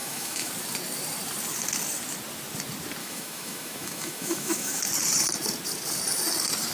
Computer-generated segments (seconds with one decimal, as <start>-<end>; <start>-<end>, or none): 0.0-0.5; 3.0-4.8